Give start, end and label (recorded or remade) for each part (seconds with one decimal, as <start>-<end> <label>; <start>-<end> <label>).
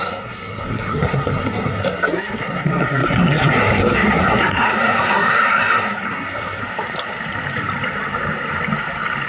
0.0-6.6 remade; 6.6-9.3 recorded